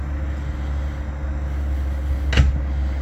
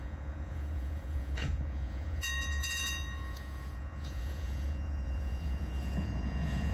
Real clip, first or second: first